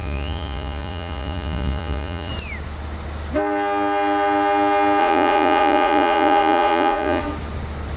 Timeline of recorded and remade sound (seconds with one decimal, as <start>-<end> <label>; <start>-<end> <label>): 0.0-2.3 remade; 2.3-5.0 recorded; 5.0-7.2 remade; 7.2-8.0 recorded